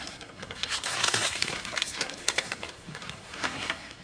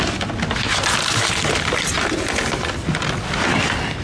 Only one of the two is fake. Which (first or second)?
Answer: first